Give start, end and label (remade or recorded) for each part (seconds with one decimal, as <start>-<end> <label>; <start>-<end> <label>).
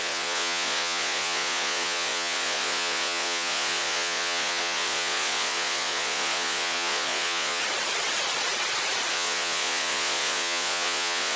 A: 0.0-7.6 remade; 7.6-9.1 recorded; 9.1-11.4 remade